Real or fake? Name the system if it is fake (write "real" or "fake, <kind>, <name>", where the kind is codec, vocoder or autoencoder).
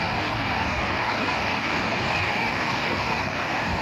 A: fake, codec, DAC